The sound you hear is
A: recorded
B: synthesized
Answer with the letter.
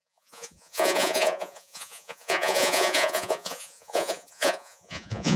B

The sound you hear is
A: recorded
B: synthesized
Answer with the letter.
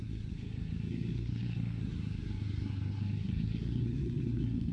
B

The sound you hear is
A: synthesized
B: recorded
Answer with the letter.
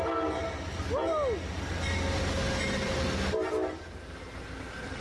B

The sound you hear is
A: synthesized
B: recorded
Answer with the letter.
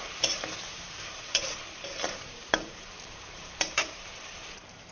A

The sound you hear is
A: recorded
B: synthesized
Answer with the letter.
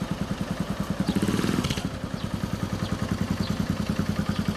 A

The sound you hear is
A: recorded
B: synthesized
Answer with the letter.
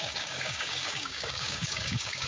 B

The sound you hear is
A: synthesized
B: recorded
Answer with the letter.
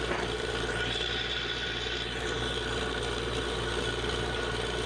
A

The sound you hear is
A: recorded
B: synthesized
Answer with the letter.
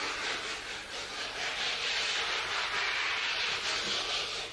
A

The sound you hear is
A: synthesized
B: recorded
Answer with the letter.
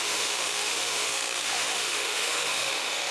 A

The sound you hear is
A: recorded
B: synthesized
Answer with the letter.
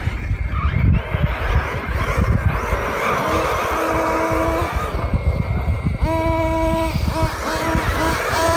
A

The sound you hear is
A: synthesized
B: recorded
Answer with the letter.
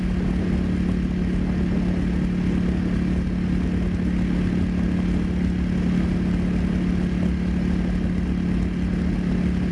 B